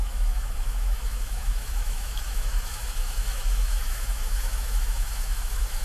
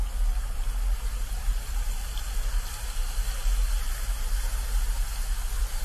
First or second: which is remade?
first